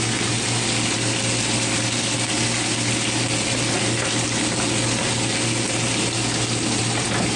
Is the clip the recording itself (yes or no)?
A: yes